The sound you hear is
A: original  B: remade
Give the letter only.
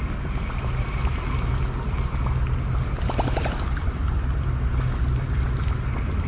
A